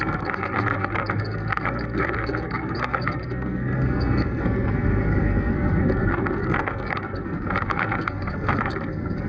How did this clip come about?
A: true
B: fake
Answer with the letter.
B